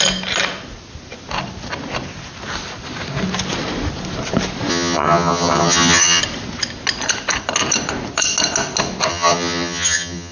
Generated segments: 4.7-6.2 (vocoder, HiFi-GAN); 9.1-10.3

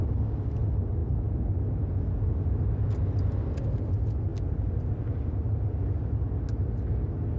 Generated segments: none

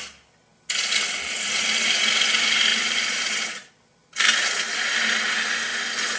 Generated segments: 2.7-3.7 (vocoder, BigVGAN v2)

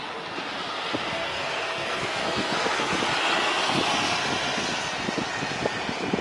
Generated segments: 1.2-2.9 (codec, SNAC)

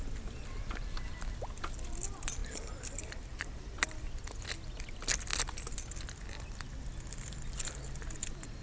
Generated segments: none

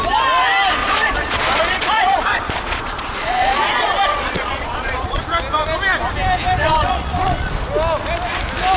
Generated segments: 0.8-5.2 (vocoder, Vocos); 6.6-7.5

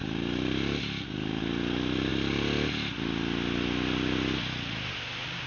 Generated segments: none